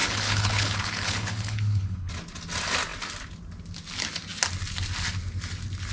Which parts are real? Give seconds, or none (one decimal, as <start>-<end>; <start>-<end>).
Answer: 2.1-5.9